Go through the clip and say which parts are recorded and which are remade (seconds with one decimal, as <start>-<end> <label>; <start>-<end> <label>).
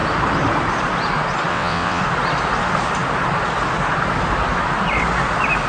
0.0-1.5 recorded; 1.5-2.0 remade; 2.0-5.7 recorded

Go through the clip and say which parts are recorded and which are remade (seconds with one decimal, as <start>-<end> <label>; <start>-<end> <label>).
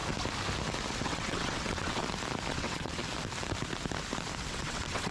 0.0-1.0 recorded; 1.0-2.0 remade; 2.0-2.5 recorded; 2.5-3.0 remade; 3.0-4.5 recorded; 4.5-5.1 remade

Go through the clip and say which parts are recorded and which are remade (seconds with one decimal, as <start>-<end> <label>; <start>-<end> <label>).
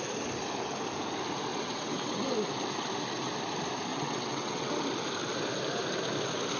0.0-1.5 recorded; 1.5-2.2 remade; 2.2-3.9 recorded; 3.9-4.7 remade; 4.7-6.6 recorded